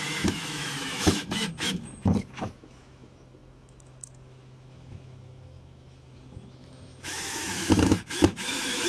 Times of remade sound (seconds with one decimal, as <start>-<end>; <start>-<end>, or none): 0.0-8.9